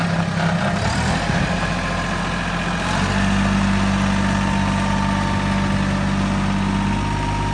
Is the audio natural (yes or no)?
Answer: yes